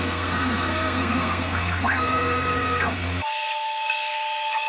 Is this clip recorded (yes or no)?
no